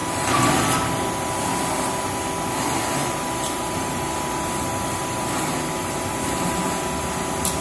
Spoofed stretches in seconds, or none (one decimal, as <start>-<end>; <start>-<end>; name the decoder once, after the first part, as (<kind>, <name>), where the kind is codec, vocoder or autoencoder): 0.0-2.1 (vocoder, BigVGAN v2); 3.0-6.1